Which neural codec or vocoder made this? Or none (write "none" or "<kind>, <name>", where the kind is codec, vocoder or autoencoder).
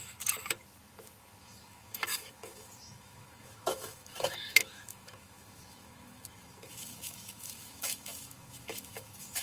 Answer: autoencoder, DAC-VAE